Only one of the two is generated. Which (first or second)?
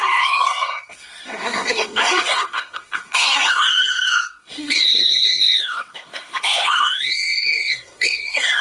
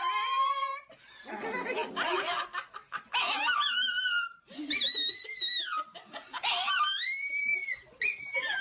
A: first